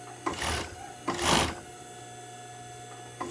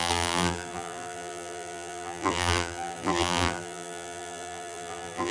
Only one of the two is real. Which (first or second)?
first